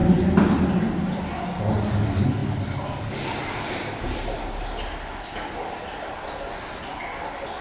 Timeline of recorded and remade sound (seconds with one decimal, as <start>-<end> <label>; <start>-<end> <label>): 0.0-7.6 recorded